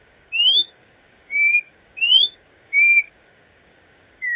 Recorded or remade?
remade